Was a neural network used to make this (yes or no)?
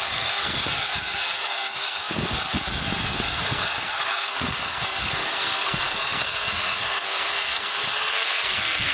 yes